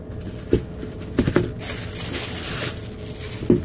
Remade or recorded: recorded